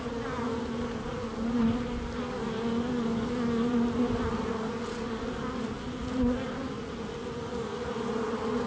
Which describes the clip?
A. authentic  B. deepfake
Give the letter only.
A